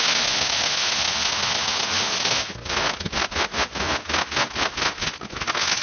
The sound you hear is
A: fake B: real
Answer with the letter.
B